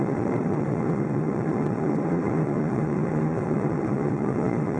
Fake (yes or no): yes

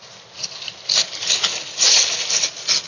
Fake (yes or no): no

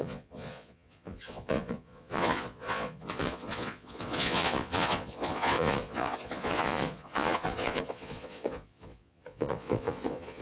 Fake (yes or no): yes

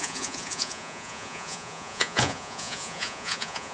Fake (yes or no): yes